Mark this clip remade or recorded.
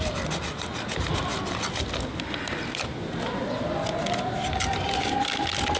recorded